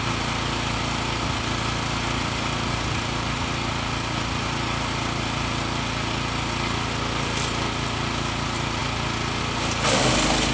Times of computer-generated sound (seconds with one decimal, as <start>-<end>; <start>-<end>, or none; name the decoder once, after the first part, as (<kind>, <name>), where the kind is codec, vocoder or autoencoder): none